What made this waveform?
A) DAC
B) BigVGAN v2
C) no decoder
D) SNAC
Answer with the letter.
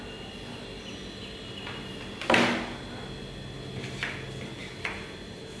C